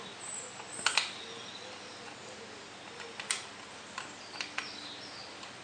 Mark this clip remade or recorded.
recorded